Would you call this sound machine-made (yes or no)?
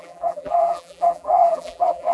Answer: yes